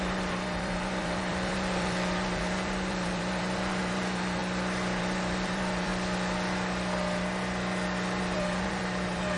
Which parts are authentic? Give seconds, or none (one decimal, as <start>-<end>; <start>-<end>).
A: 4.4-5.0; 5.9-8.2